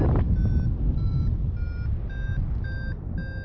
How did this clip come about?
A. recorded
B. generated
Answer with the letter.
A